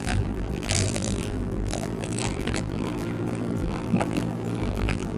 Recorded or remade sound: remade